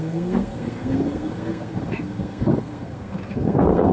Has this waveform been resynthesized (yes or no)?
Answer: yes